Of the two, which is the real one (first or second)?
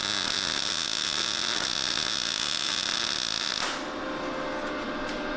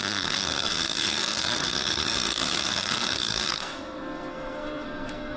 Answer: first